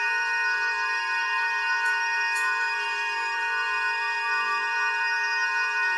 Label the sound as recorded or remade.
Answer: remade